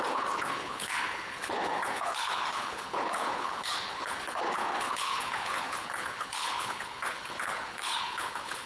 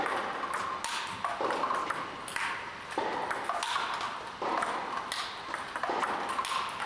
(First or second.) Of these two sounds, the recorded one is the second